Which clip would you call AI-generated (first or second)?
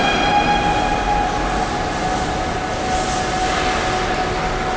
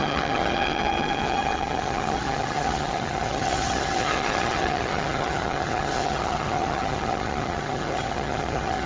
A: second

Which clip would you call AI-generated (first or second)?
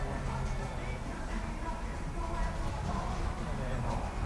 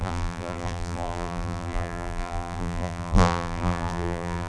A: second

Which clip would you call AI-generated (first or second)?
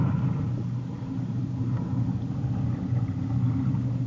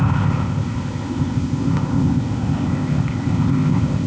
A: second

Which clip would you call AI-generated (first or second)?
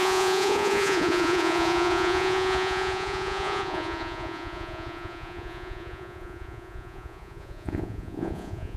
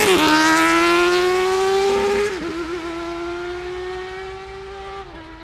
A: first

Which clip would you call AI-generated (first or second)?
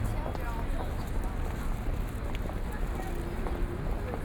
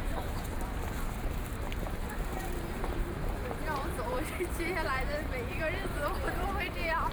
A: second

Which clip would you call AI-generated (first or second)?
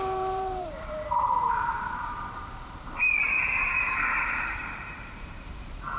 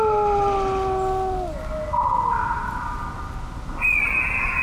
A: first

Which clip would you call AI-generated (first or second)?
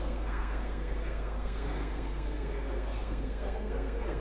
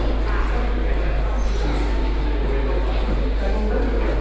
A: first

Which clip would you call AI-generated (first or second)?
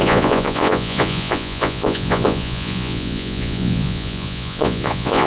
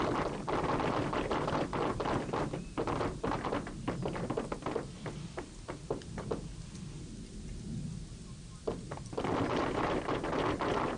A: first